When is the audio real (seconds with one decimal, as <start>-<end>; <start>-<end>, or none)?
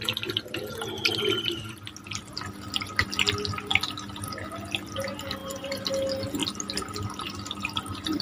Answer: 0.0-5.4; 5.9-8.2